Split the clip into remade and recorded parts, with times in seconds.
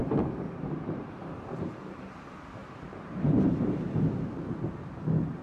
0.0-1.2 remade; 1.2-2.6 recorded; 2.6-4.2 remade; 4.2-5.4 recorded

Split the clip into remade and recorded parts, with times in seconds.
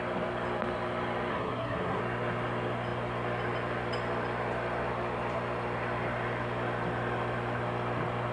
0.0-1.3 recorded; 1.3-2.0 remade; 2.0-8.3 recorded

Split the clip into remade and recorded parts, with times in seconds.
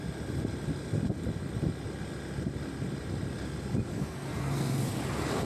0.0-3.9 recorded; 3.9-5.0 remade; 5.0-5.5 recorded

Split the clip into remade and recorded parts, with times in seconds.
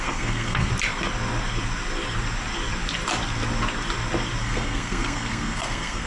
0.0-0.7 remade; 0.7-4.4 recorded; 4.4-6.1 remade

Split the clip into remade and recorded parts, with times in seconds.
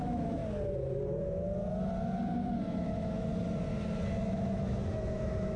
0.0-0.4 remade; 0.4-2.9 recorded; 2.9-3.3 remade; 3.3-4.1 recorded; 4.1-5.6 remade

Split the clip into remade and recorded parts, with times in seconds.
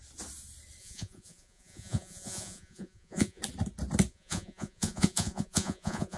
0.0-0.8 recorded; 0.8-3.4 remade; 3.4-4.1 recorded; 4.1-6.2 remade